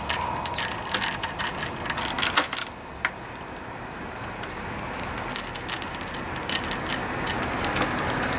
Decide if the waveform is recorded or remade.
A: recorded